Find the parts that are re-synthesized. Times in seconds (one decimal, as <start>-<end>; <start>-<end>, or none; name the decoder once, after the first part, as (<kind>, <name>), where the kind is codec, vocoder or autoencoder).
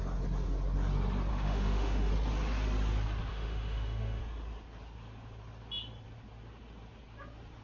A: 1.3-2.1 (autoencoder, DAC-VAE); 3.3-4.2